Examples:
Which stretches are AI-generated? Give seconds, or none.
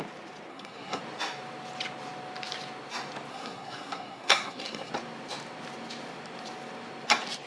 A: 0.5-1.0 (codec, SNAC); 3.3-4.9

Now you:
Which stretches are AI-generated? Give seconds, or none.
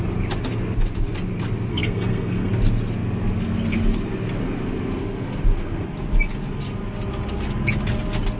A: 1.7-2.5 (codec, SNAC)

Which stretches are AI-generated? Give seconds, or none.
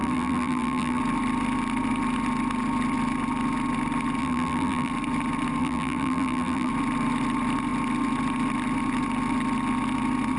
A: 0.0-1.0 (vocoder, BigVGAN v2); 4.2-4.9; 5.6-6.7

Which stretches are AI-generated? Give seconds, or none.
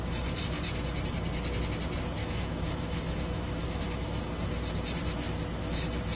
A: 2.2-4.2 (autoencoder, DAC-VAE)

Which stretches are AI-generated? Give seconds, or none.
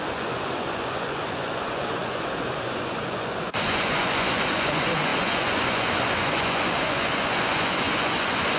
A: 0.0-8.6 (vocoder, Vocos)